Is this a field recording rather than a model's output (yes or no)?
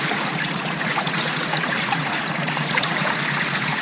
no